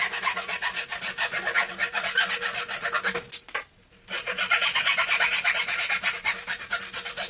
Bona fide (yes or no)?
yes